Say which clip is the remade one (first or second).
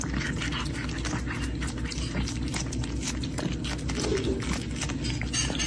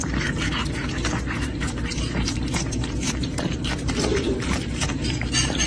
second